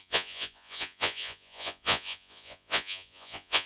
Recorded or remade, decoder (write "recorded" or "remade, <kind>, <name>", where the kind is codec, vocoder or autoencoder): remade, vocoder, Vocos